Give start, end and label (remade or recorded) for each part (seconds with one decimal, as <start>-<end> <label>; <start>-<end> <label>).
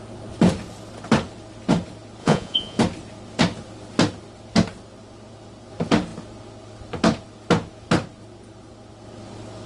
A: 0.0-2.2 recorded; 2.2-2.8 remade; 2.8-9.7 recorded